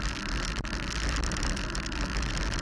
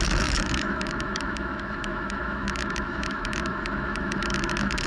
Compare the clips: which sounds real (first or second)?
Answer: first